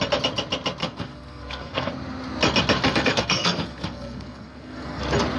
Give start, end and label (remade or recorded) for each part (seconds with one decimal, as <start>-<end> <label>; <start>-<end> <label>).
0.0-0.8 recorded; 0.8-1.9 remade; 1.9-2.8 recorded; 2.8-5.0 remade; 5.0-5.4 recorded